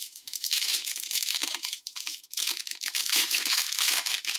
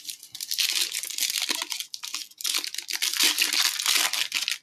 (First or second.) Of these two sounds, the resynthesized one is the first